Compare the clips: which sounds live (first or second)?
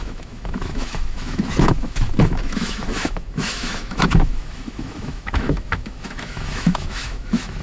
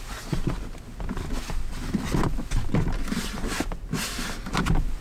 second